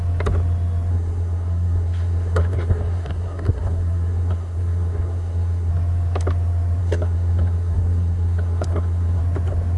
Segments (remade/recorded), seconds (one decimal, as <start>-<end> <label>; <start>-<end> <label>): 0.0-0.9 recorded; 0.9-5.7 remade; 5.7-6.8 recorded; 6.8-9.2 remade; 9.2-9.8 recorded